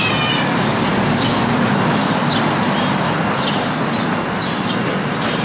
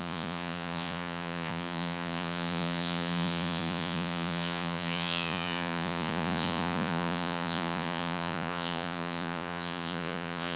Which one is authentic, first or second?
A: first